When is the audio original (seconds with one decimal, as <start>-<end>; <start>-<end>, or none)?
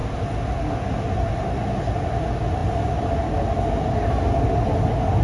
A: 0.0-5.2